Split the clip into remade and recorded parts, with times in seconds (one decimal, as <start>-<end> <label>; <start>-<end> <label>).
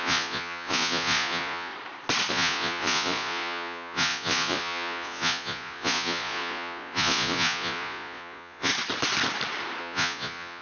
0.0-1.7 remade; 1.7-2.3 recorded; 2.3-8.7 remade; 8.7-9.8 recorded; 9.8-10.6 remade